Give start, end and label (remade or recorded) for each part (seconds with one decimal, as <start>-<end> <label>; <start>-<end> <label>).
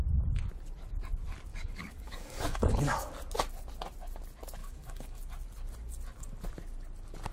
0.0-1.5 recorded; 1.5-3.1 remade; 3.1-4.6 recorded; 4.6-5.2 remade; 5.2-7.3 recorded